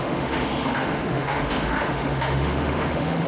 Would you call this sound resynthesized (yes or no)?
yes